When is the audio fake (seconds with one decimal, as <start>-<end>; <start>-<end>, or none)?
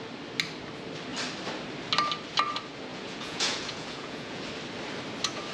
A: 2.9-4.4